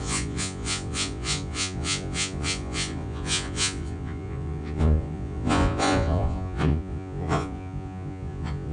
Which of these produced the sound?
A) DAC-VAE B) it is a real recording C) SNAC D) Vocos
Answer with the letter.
D